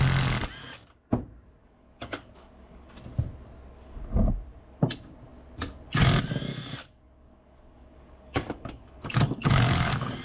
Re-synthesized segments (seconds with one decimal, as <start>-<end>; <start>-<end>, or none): 1.6-2.9; 6.8-10.2